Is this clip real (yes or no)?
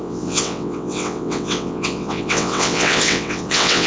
no